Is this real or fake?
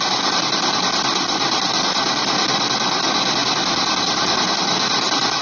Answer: real